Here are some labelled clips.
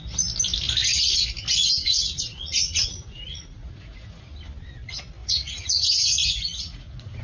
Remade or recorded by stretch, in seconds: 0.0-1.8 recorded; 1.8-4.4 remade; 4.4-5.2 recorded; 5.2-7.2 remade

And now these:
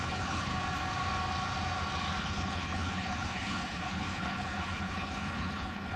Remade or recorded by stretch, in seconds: 0.0-0.5 remade; 0.5-2.2 recorded; 2.2-6.0 remade

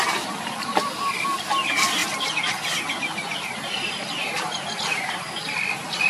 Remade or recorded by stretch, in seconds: 0.0-6.1 recorded

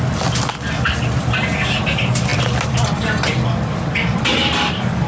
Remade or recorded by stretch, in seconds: 0.0-5.1 recorded